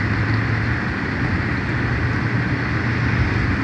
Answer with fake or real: real